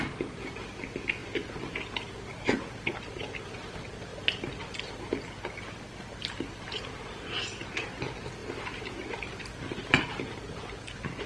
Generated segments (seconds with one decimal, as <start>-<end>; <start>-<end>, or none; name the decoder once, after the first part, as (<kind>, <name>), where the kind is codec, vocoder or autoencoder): 1.2-2.9 (vocoder, BigVGAN v2); 4.1-7.7; 8.4-10.0